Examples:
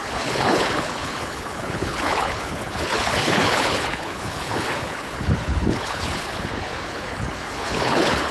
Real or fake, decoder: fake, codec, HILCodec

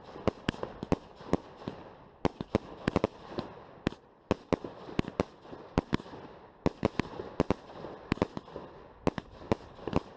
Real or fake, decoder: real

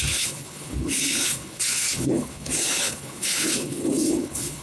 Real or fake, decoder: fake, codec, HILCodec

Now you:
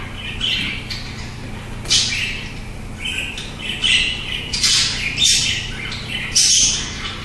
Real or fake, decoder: real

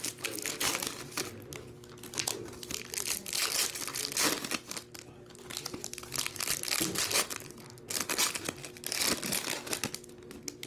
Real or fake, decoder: real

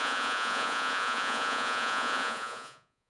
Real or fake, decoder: fake, vocoder, Vocos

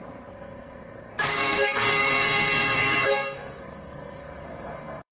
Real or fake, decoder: fake, codec, SNAC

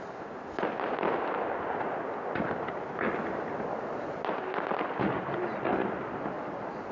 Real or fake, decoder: real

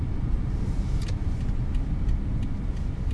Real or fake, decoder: real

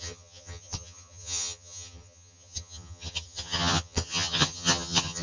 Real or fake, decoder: fake, vocoder, HiFi-GAN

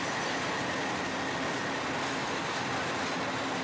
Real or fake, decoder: real